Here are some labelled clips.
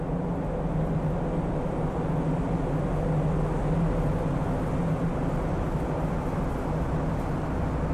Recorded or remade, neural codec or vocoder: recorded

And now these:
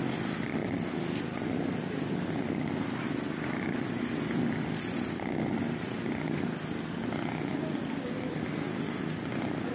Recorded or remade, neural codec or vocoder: recorded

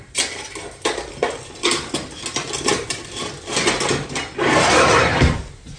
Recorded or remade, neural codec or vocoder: recorded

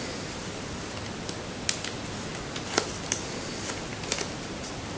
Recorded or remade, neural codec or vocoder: recorded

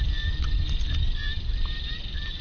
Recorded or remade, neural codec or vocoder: recorded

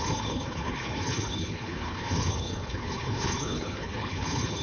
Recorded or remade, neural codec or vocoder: remade, codec, HILCodec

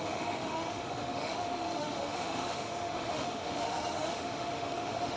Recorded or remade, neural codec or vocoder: remade, autoencoder, DAC-VAE